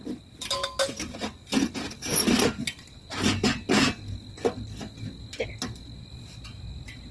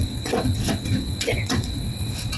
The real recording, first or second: first